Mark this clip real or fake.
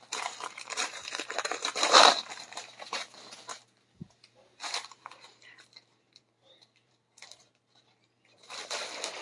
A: fake